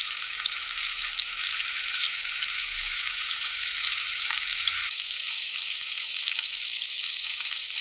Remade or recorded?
remade